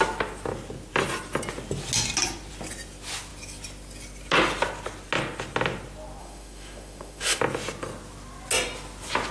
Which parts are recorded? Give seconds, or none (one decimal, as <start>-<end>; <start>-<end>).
0.0-6.2; 7.4-9.3